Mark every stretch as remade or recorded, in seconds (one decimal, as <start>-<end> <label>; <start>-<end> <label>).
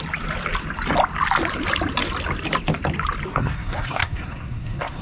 0.0-3.3 recorded; 3.3-5.0 remade